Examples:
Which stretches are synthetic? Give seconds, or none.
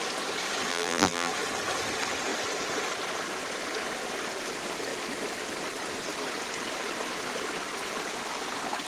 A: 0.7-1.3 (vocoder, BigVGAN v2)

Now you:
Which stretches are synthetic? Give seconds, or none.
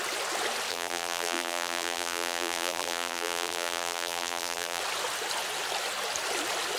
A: 0.7-4.8 (vocoder, BigVGAN v2)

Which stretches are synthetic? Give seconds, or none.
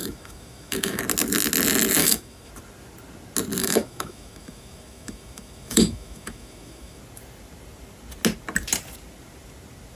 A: 0.0-1.0 (autoencoder, DAC-VAE); 2.0-2.5; 3.6-7.0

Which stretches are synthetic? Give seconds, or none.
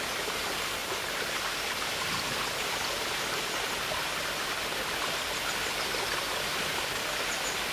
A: 0.8-5.4 (vocoder, BigVGAN v2)